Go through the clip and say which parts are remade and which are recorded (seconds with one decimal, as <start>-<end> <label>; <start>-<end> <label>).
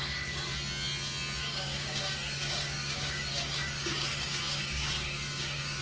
0.0-0.5 remade; 0.5-1.4 recorded; 1.4-5.8 remade